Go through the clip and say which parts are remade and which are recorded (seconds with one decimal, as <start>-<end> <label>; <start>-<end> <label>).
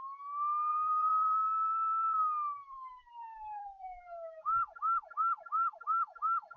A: 0.0-0.7 recorded; 0.7-4.4 remade; 4.4-6.6 recorded